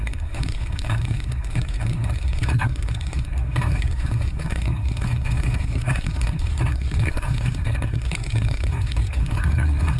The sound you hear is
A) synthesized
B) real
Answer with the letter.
A